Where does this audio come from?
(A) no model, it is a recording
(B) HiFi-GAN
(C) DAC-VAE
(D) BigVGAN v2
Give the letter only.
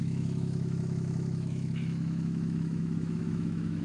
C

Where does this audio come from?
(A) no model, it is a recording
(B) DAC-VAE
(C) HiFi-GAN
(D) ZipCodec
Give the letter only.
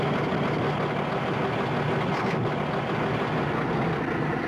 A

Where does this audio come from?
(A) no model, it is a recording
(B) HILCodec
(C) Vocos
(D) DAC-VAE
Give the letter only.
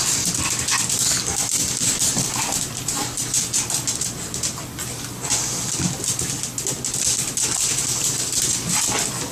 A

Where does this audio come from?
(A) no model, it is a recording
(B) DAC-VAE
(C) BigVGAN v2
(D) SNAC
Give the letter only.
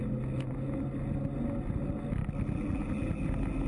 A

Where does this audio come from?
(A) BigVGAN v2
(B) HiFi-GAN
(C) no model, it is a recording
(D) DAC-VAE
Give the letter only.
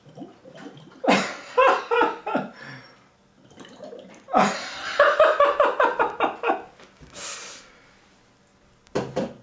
C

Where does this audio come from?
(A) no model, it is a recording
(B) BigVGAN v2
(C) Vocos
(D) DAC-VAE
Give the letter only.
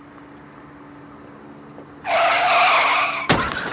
A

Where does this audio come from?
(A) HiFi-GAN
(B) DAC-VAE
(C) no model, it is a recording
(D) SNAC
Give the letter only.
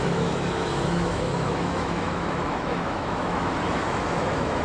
B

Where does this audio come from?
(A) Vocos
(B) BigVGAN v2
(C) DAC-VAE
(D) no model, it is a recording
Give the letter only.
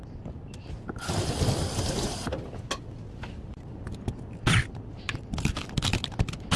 D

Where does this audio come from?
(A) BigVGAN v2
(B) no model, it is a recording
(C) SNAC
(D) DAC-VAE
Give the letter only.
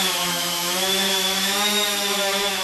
D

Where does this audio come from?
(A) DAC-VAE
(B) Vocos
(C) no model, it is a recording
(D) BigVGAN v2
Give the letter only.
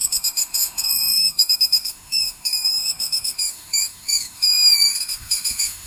A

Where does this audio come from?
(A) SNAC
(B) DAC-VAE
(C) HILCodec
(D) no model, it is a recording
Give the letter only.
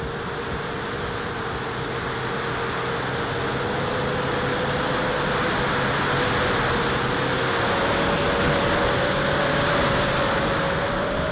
D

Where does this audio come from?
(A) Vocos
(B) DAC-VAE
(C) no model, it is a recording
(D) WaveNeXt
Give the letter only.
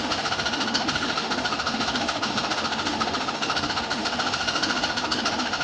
B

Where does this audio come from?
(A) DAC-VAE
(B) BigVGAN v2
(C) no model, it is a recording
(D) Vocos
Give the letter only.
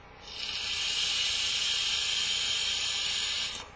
C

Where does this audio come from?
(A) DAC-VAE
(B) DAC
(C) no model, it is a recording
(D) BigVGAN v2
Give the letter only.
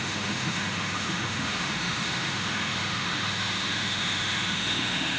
A